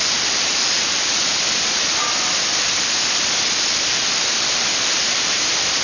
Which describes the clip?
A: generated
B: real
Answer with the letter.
A